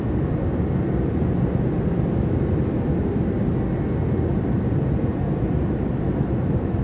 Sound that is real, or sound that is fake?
real